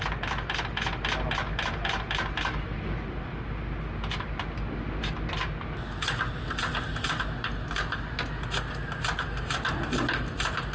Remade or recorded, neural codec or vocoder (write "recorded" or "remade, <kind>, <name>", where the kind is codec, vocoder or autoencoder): recorded